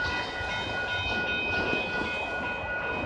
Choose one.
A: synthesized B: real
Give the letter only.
B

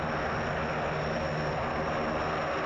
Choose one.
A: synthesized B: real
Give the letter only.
B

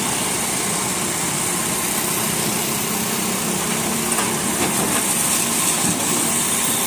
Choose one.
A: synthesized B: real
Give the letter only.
B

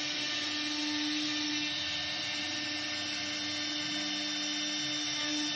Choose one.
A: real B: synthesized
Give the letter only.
A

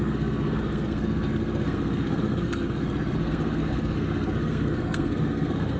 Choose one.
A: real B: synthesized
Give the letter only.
B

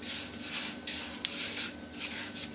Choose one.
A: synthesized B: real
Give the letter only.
B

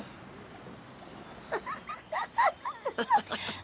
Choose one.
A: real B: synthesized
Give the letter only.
A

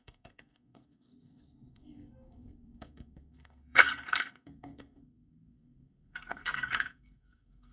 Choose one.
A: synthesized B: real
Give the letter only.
A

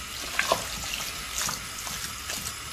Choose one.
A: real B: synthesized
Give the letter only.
A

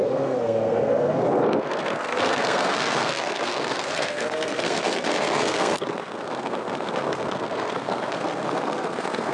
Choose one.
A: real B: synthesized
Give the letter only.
B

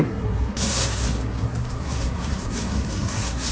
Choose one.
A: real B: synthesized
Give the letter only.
B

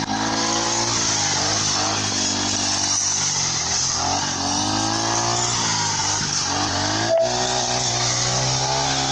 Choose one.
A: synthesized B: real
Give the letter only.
B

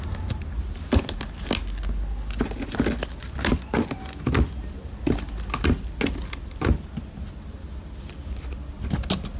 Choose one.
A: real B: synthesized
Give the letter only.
A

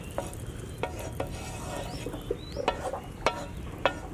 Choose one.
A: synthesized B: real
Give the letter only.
B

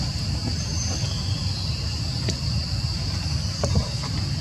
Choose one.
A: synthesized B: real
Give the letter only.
B